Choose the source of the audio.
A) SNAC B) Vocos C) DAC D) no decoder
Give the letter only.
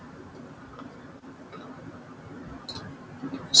D